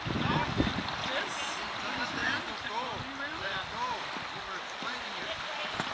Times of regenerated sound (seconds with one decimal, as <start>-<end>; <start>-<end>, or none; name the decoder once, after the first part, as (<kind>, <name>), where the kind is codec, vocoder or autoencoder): none